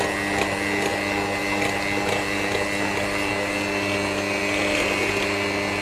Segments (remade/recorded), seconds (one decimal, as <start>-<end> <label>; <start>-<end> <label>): 0.0-5.8 recorded

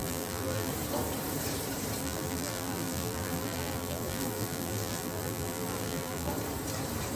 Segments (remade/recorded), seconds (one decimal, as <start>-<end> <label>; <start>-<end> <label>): 0.0-0.7 remade; 0.7-2.0 recorded; 2.0-6.3 remade; 6.3-7.2 recorded

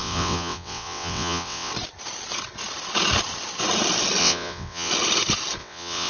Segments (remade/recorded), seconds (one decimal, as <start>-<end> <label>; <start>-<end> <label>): 0.0-1.7 remade; 1.7-4.2 recorded; 4.2-4.9 remade; 4.9-5.6 recorded; 5.6-6.1 remade

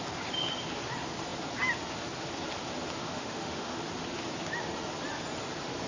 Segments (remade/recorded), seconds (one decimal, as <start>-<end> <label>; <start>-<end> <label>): 0.0-3.0 recorded; 3.0-3.8 remade; 3.8-5.9 recorded

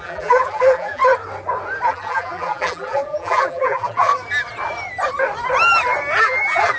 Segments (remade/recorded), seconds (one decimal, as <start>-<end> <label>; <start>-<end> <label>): 0.0-1.0 remade; 1.0-1.9 recorded; 1.9-4.1 remade; 4.1-6.2 recorded; 6.2-6.8 remade

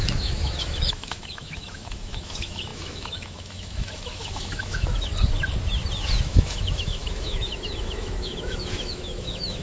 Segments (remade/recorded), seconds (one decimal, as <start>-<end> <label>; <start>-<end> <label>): 0.0-5.1 remade; 5.1-6.2 recorded; 6.2-9.6 remade

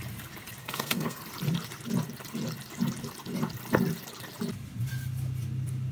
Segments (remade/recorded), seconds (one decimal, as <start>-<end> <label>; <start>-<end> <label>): 0.0-0.6 recorded; 0.6-1.2 remade; 1.2-5.9 recorded

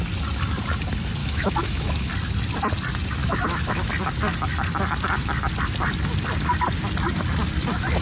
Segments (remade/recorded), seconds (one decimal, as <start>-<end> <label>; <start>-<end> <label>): 0.0-1.2 recorded; 1.2-2.1 remade; 2.1-3.2 recorded; 3.2-3.9 remade; 3.9-8.0 recorded